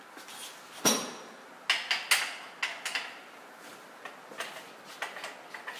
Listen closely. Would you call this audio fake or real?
real